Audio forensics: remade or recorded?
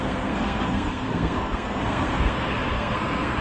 remade